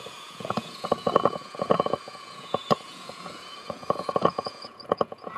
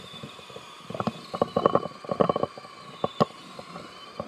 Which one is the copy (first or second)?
first